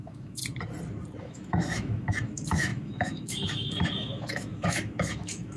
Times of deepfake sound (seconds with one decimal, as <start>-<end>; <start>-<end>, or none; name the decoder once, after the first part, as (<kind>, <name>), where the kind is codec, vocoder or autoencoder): 0.0-0.4 (autoencoder, DAC-VAE); 1.2-5.6